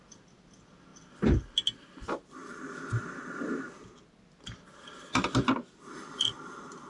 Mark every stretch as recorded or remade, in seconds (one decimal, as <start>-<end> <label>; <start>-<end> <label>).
0.0-6.9 recorded